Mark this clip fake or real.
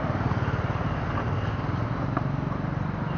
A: real